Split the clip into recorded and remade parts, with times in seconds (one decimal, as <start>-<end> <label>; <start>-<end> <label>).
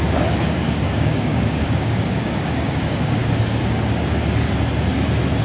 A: 0.0-3.2 remade; 3.2-5.4 recorded